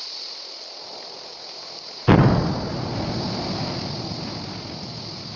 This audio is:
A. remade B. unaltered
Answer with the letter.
B